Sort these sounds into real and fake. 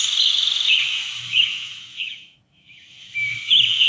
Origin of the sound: fake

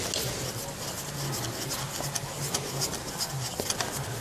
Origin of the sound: real